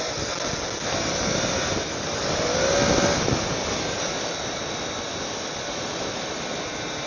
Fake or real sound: real